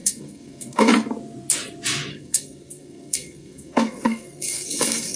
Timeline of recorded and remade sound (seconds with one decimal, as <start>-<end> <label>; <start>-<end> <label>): 0.0-0.9 remade; 0.9-2.1 recorded; 2.1-5.2 remade